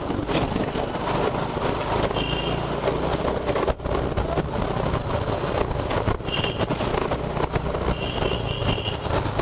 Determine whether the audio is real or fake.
real